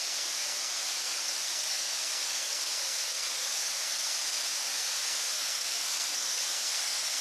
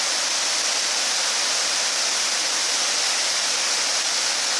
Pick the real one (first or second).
second